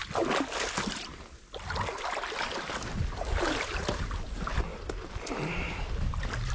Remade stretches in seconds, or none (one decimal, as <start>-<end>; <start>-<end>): none